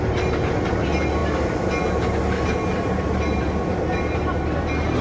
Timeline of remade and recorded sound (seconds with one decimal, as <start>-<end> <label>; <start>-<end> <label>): 0.0-5.0 recorded